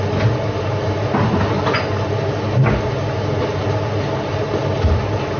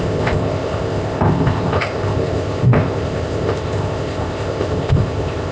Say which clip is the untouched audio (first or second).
first